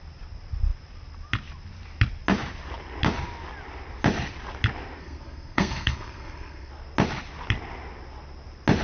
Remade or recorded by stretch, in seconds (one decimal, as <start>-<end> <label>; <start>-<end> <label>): 0.0-5.0 recorded; 5.0-6.7 remade; 6.7-8.8 recorded